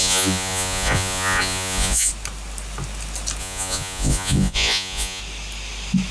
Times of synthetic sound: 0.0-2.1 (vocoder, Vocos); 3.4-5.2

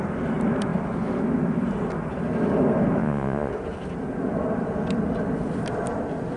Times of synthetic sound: 3.0-3.5 (vocoder, Vocos)

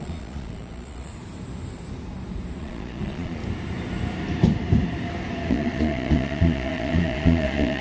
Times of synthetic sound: 0.0-1.1 (vocoder, Vocos); 2.6-3.4; 5.5-7.8

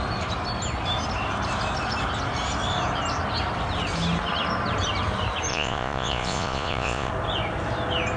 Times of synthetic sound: 5.5-7.1 (vocoder, Vocos)

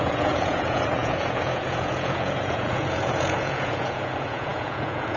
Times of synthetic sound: 0.0-5.2 (vocoder, Vocos)